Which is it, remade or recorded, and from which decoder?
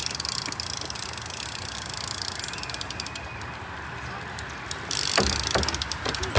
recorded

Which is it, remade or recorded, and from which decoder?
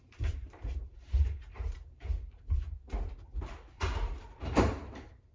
remade, vocoder, BigVGAN v2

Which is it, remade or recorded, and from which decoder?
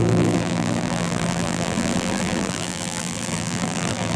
remade, vocoder, BigVGAN v2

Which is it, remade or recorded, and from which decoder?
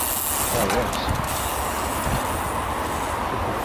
recorded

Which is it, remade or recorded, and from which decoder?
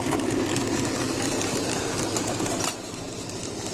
remade, vocoder, BigVGAN v2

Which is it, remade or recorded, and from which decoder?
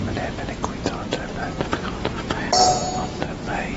recorded